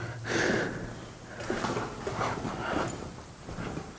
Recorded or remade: recorded